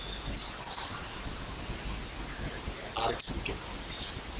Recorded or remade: recorded